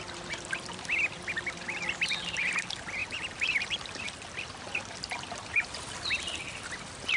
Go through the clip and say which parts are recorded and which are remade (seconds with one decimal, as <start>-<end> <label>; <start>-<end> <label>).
0.0-7.2 recorded

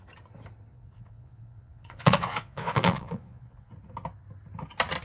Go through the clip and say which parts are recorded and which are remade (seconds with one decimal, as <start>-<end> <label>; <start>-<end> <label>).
0.0-0.7 recorded; 0.7-3.7 remade; 3.7-5.0 recorded

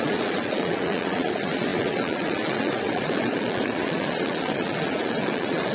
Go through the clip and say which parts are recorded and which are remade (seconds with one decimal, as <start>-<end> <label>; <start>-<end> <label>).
0.0-5.7 remade